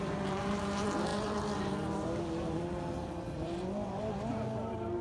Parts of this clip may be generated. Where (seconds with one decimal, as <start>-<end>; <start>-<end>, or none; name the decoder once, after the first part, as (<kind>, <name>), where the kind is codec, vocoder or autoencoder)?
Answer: 0.0-5.0 (vocoder, BigVGAN v2)